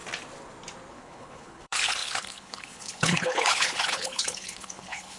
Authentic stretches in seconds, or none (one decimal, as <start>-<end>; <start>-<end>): 0.0-0.9